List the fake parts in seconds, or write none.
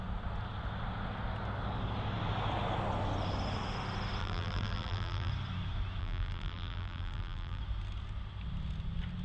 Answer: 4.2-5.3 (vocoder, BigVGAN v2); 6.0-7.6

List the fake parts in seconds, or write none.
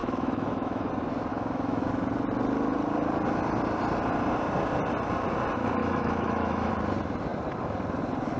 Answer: 0.0-0.9 (autoencoder, DAC-VAE); 1.3-1.9; 5.8-6.7